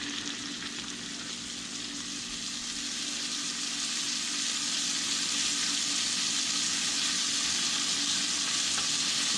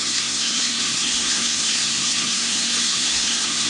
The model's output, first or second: second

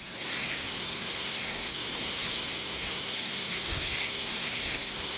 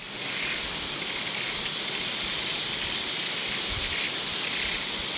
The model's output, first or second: first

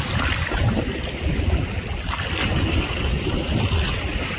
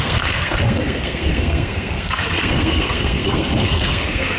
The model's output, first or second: second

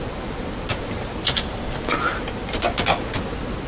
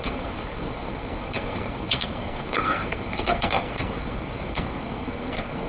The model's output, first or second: second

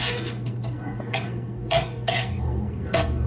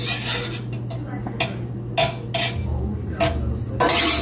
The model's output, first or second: first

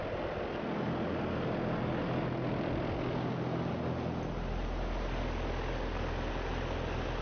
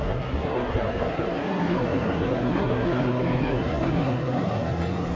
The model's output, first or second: second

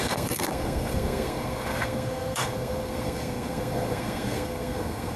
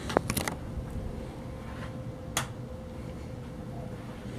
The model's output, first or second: first